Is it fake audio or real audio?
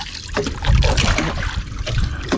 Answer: real